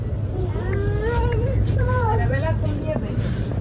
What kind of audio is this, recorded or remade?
remade